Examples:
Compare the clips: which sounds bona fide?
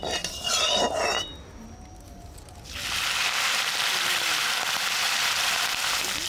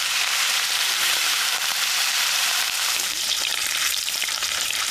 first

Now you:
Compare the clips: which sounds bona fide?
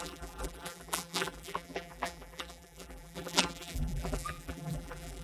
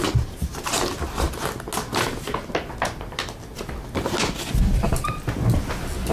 second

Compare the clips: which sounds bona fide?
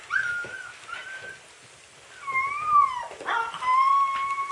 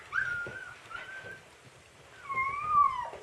first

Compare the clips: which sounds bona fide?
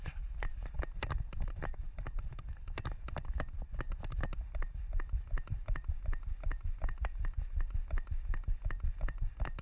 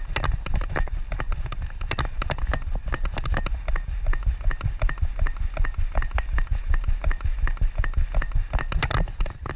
second